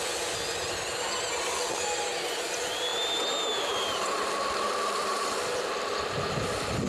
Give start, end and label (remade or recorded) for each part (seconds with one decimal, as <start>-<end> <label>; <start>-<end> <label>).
0.0-6.9 recorded